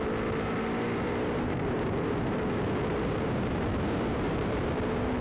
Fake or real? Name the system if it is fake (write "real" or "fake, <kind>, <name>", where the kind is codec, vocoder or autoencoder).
fake, vocoder, BigVGAN v2